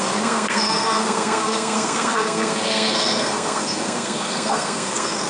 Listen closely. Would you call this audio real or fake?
fake